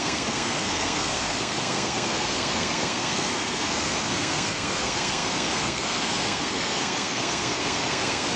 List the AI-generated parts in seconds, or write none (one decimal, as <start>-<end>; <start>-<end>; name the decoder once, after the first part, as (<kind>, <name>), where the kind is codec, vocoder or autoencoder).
0.0-8.4 (codec, SNAC)